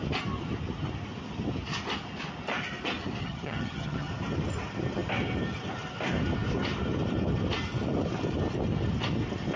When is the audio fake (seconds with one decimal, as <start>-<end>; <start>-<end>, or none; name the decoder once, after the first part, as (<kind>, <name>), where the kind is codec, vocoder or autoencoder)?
3.2-4.1 (vocoder, HiFi-GAN)